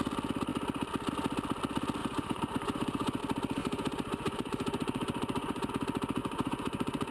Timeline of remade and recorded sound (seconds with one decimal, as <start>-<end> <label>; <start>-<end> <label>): 0.0-2.0 recorded; 2.0-3.2 remade; 3.2-3.6 recorded; 3.6-5.7 remade; 5.7-6.2 recorded; 6.2-7.1 remade